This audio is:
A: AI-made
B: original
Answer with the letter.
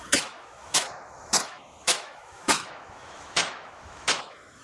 A